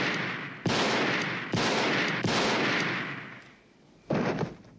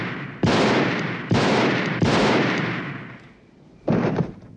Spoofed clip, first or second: second